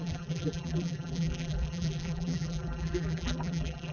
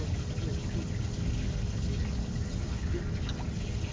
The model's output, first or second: first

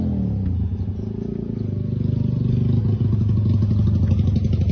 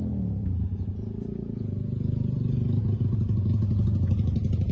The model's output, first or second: second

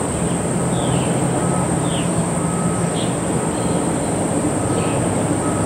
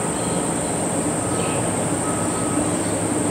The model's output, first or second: first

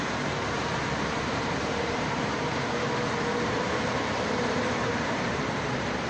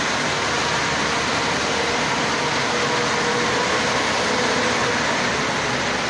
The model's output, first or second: first